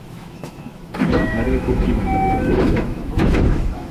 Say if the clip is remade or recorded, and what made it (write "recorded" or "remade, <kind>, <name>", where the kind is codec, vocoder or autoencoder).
remade, autoencoder, DAC-VAE